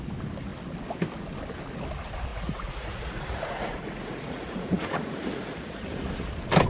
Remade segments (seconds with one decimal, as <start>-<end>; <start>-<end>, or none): 2.3-6.3